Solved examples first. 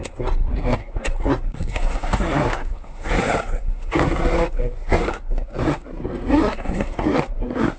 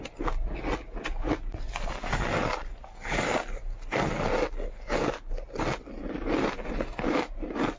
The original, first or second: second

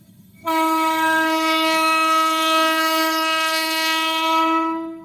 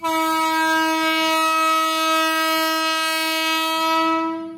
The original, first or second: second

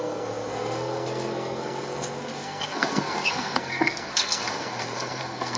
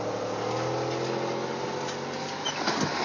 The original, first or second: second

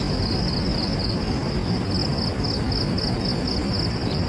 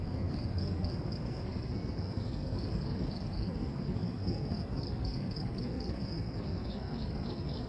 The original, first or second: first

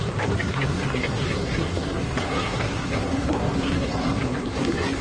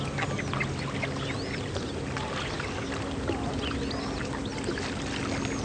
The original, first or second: second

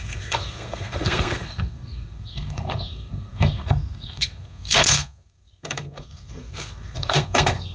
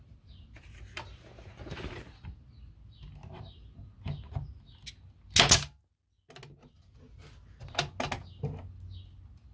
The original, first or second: second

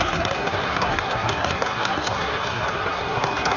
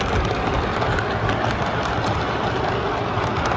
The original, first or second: second